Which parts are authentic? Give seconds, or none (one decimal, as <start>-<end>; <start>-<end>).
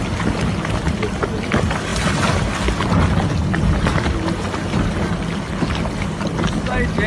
0.0-7.1